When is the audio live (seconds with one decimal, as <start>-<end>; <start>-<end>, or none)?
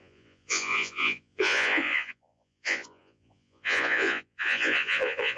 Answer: none